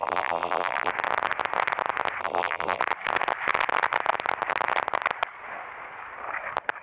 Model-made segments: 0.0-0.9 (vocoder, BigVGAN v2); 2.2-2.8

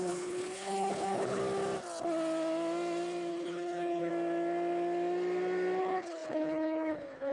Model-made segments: 0.0-1.4 (codec, HILCodec); 3.3-4.1; 5.8-7.3

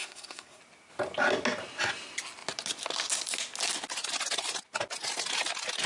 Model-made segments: 0.0-0.6 (codec, SNAC)

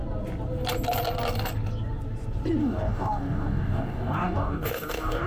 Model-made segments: 2.6-5.3 (codec, DAC)

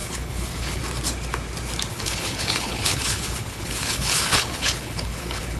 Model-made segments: 0.0-0.8 (codec, HILCodec); 1.9-5.6

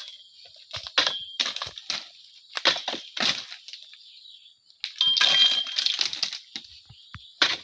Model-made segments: none

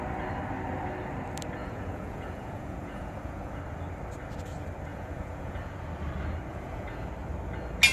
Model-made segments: 1.6-3.6 (vocoder, Vocos); 4.9-5.7; 6.5-7.1